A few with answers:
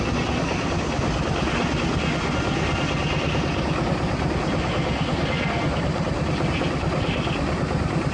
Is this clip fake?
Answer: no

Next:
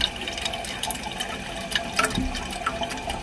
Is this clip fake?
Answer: no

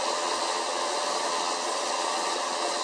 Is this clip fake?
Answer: yes